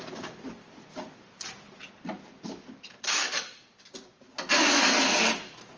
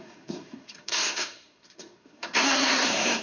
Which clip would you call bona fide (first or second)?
first